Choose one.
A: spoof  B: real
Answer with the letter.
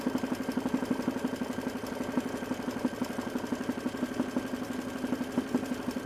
B